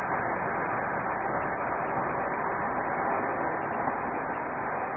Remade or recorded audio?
recorded